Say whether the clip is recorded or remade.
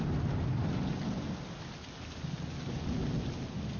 recorded